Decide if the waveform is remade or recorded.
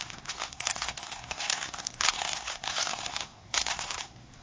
remade